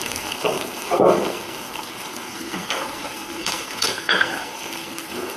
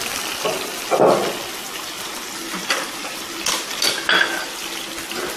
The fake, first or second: first